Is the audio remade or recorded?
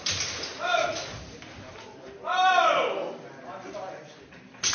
recorded